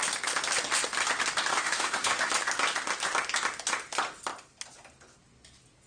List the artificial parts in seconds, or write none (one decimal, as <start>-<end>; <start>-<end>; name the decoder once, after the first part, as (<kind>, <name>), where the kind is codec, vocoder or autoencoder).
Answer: 1.5-2.3 (autoencoder, DAC-VAE)